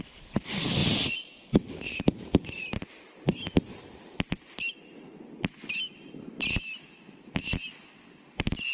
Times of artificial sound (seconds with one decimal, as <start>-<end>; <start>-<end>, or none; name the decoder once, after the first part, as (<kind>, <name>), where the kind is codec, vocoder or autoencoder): none